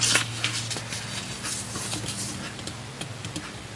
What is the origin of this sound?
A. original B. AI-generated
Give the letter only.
A